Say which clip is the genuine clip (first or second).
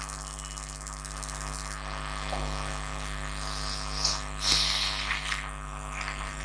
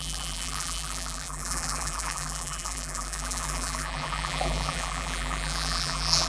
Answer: first